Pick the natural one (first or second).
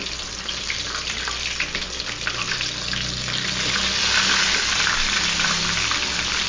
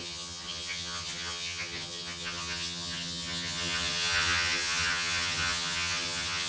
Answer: first